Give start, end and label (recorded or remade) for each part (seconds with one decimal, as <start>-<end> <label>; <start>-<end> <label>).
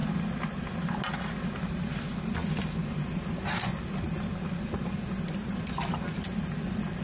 0.0-7.0 recorded